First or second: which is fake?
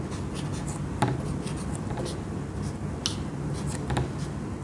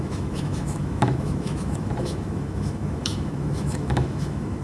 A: second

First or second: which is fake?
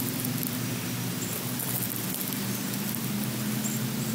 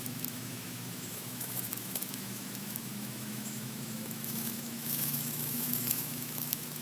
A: second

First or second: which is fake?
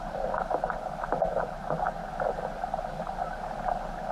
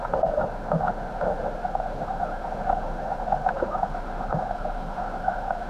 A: second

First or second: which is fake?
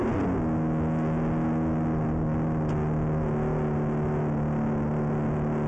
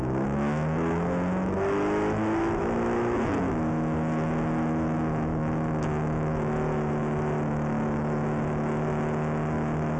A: second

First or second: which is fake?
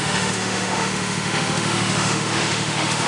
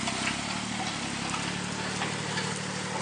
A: first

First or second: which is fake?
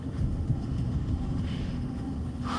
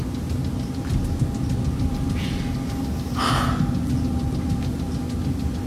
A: first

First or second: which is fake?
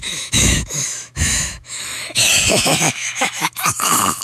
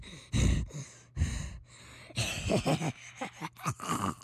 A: first